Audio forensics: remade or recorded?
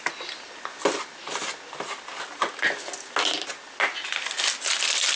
recorded